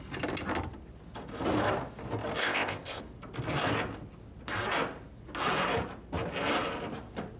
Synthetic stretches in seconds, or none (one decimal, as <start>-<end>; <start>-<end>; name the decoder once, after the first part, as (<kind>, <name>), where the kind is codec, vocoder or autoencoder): 2.4-3.0 (codec, ZipCodec)